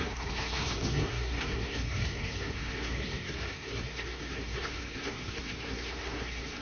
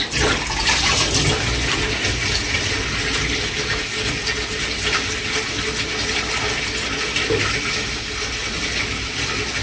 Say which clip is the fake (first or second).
first